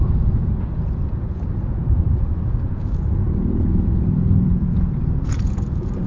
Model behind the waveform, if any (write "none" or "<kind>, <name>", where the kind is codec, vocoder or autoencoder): vocoder, Vocos